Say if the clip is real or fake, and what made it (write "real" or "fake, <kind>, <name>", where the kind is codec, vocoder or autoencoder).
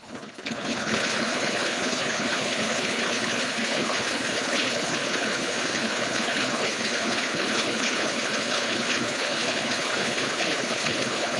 fake, codec, HILCodec